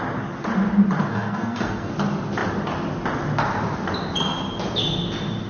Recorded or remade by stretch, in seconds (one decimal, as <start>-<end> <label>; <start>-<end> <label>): 0.0-1.1 recorded; 1.1-1.9 remade; 1.9-5.5 recorded